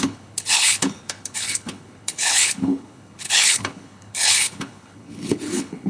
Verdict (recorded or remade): remade